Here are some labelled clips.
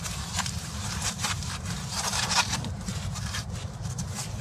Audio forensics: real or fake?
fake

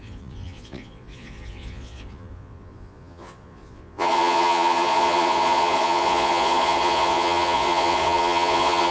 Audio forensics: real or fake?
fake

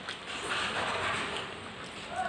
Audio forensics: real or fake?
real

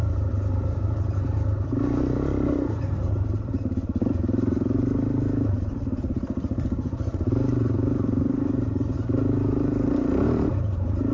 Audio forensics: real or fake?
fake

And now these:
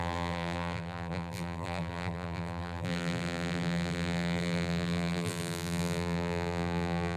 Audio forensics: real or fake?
fake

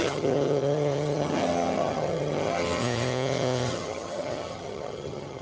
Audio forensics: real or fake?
fake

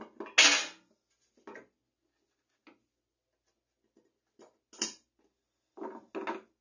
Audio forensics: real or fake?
real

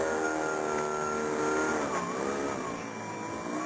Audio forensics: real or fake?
real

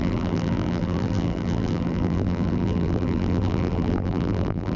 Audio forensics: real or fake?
fake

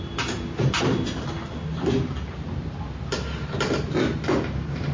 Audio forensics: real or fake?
real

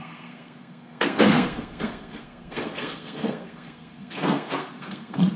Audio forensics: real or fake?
fake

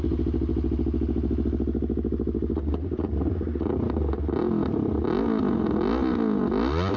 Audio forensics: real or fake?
real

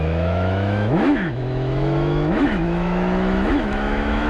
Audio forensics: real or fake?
fake